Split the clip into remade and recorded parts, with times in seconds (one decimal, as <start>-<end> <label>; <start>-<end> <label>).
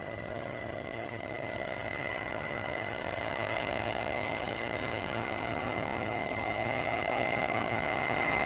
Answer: 0.0-8.5 remade